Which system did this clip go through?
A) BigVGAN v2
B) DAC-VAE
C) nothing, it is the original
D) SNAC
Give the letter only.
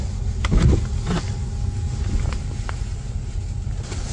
C